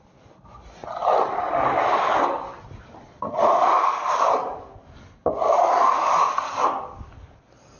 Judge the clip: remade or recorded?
recorded